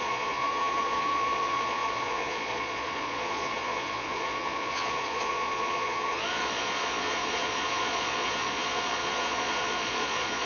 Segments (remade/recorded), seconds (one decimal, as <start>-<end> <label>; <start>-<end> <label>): 0.0-10.5 remade